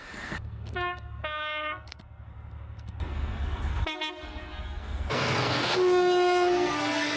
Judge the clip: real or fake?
fake